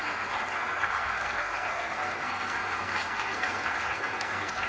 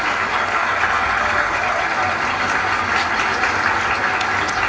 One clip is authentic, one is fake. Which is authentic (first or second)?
second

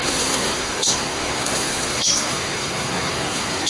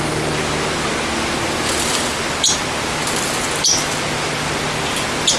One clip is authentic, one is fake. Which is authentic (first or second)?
second